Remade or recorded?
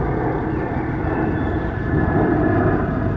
recorded